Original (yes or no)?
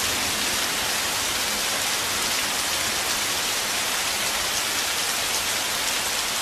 yes